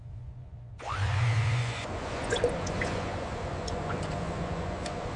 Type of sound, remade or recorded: remade